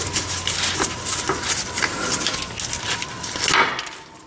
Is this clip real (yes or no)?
yes